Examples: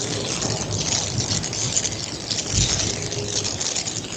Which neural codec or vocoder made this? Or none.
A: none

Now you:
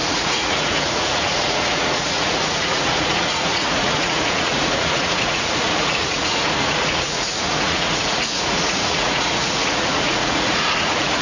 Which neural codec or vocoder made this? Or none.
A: vocoder, Vocos